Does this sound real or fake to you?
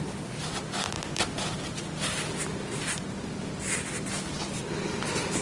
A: real